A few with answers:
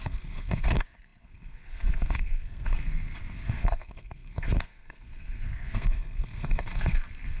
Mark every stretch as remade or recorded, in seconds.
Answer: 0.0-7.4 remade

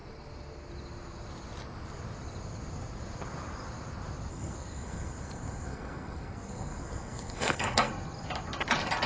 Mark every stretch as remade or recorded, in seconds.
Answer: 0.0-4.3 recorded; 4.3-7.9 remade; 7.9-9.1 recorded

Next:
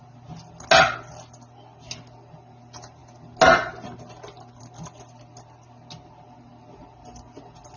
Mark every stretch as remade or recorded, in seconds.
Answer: 0.0-7.8 recorded

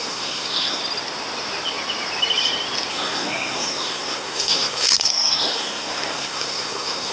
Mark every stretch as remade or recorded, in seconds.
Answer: 0.0-0.8 remade; 0.8-2.9 recorded; 2.9-7.1 remade

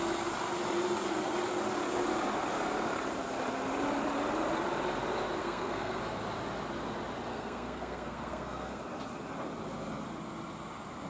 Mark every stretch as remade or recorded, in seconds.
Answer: 0.0-5.4 recorded; 5.4-6.0 remade; 6.0-7.3 recorded; 7.3-8.8 remade; 8.8-11.1 recorded

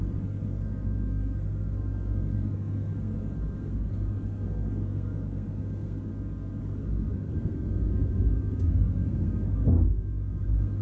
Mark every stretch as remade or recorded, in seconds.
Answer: 0.0-6.1 remade; 6.1-6.6 recorded; 6.6-10.8 remade

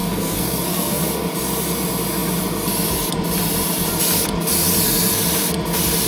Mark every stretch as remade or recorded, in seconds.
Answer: 0.0-1.0 remade; 1.0-6.1 recorded